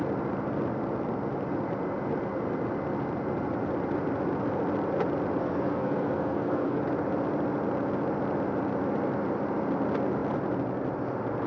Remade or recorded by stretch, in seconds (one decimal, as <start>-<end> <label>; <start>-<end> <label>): 0.0-5.4 recorded; 5.4-6.8 remade; 6.8-11.5 recorded